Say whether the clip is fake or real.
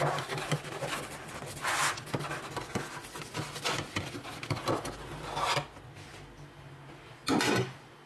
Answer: real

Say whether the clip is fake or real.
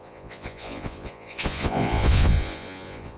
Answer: fake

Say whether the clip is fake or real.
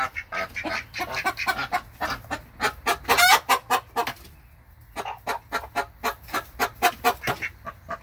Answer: real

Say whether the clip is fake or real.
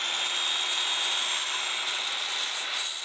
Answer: real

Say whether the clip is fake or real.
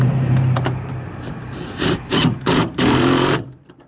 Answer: fake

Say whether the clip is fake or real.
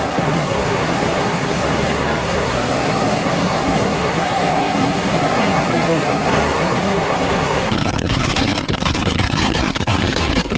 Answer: fake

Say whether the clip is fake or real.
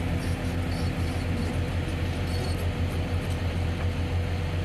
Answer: real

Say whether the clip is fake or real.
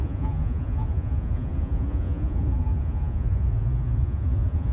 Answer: fake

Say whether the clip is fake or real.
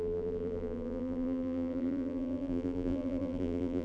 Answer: fake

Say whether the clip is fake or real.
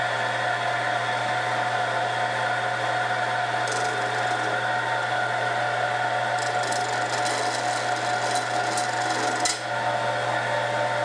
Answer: real